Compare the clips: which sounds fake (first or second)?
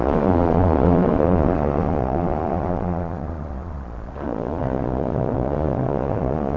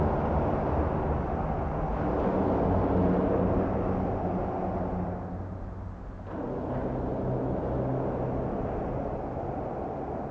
first